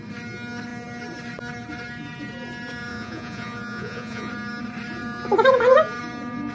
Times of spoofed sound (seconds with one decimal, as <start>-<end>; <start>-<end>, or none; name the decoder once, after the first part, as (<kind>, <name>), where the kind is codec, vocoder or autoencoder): 2.9-4.3 (vocoder, Vocos)